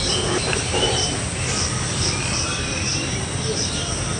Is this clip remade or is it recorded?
recorded